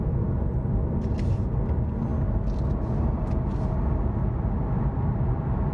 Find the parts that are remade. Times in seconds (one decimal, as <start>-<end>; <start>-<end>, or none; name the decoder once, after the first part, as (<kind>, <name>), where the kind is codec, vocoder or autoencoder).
none